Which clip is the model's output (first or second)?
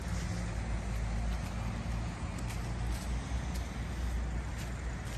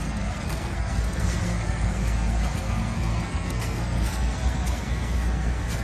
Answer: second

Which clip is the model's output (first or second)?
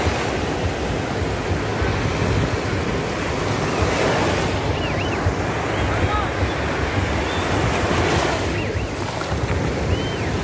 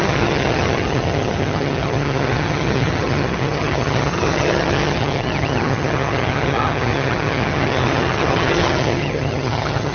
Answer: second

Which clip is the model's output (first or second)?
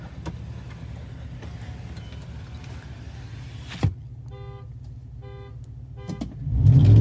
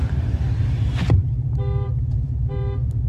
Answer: second